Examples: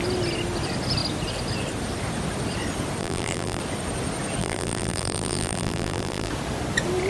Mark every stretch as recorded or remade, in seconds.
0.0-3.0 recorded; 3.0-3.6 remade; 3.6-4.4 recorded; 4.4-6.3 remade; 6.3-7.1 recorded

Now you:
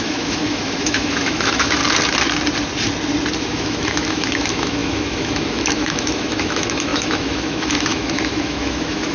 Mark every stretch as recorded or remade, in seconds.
0.0-1.8 remade; 1.8-3.4 recorded; 3.4-9.1 remade

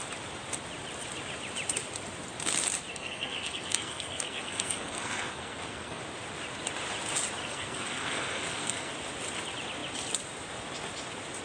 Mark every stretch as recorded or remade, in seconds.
0.0-2.9 recorded; 2.9-6.0 remade; 6.0-7.4 recorded; 7.4-8.9 remade; 8.9-11.4 recorded

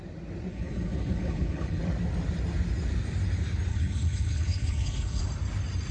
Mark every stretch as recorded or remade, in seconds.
0.0-0.5 recorded; 0.5-1.8 remade; 1.8-3.7 recorded; 3.7-5.2 remade; 5.2-5.9 recorded

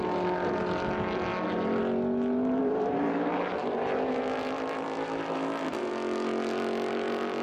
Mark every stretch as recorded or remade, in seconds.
0.0-2.6 recorded; 2.6-5.9 remade; 5.9-7.4 recorded

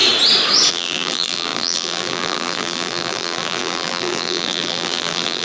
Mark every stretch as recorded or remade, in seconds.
0.0-0.7 recorded; 0.7-5.4 remade

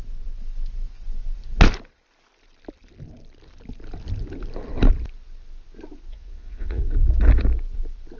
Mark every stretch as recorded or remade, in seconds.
0.0-6.1 recorded; 6.1-6.8 remade; 6.8-8.2 recorded

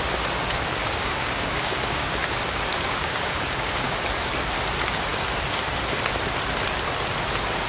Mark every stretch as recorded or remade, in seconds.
0.0-0.8 recorded; 0.8-2.2 remade; 2.2-2.7 recorded; 2.7-4.0 remade; 4.0-7.7 recorded